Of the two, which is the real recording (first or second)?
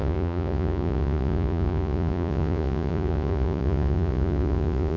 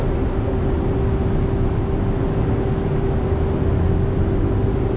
second